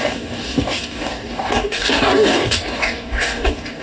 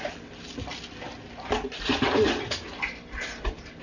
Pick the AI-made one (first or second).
first